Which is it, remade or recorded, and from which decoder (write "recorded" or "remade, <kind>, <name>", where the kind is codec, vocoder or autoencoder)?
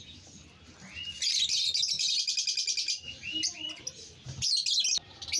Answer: recorded